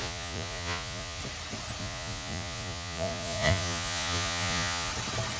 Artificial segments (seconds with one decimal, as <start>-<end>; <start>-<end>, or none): 0.0-1.2; 1.8-4.9